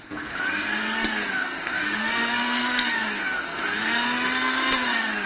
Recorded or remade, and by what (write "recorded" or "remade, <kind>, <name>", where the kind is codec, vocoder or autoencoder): remade, codec, SNAC